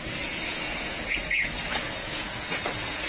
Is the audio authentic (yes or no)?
no